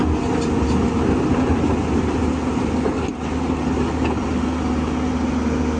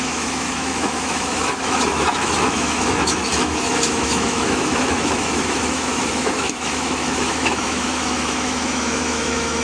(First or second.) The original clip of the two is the first